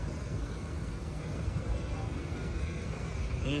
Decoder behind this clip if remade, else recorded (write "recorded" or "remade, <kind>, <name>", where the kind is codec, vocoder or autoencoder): remade, codec, SNAC